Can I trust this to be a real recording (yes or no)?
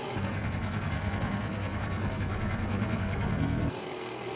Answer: no